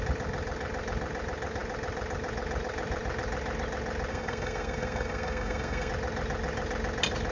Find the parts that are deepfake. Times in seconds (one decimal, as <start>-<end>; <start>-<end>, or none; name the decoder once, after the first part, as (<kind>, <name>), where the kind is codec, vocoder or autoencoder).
4.1-5.9 (codec, SNAC)